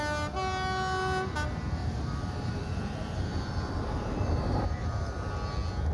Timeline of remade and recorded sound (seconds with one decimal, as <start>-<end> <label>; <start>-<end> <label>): 0.0-1.8 recorded; 1.8-5.3 remade; 5.3-5.9 recorded